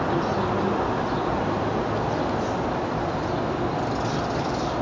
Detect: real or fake real